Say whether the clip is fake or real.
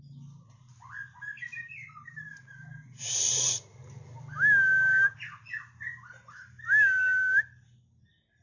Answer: real